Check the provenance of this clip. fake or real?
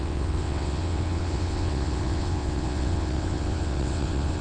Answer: fake